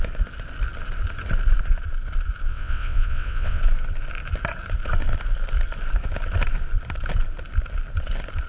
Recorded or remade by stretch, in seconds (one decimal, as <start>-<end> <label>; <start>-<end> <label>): 0.0-2.5 recorded; 2.5-3.6 remade; 3.6-8.5 recorded